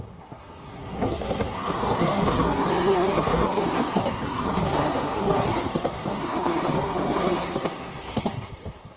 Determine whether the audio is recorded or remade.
remade